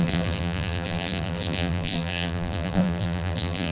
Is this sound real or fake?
fake